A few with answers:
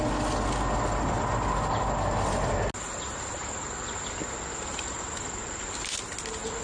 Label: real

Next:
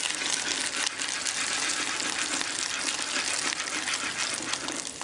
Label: real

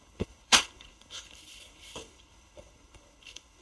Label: fake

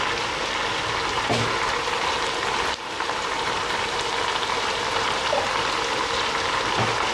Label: real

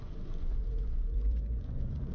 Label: fake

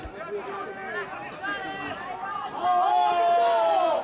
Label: real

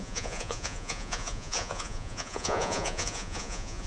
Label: fake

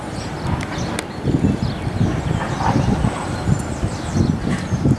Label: real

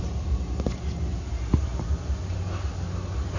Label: real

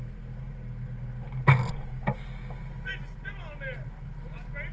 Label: real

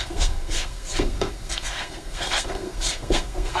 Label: fake